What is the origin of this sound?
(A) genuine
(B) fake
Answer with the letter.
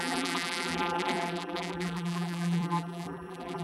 B